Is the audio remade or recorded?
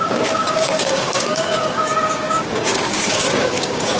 remade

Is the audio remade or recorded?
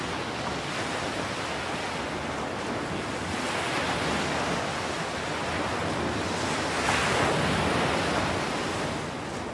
recorded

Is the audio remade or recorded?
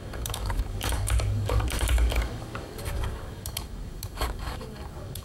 remade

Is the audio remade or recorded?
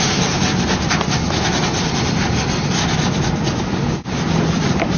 recorded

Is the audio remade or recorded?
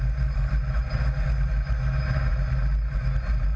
recorded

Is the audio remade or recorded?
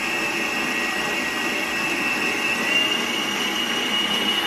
recorded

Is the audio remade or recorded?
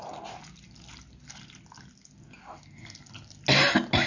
recorded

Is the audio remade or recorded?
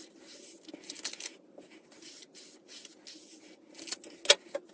recorded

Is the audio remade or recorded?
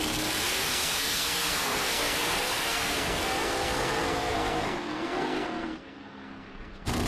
remade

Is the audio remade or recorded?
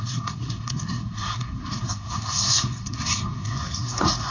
remade